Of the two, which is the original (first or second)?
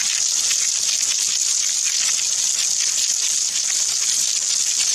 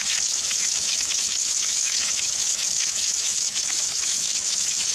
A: first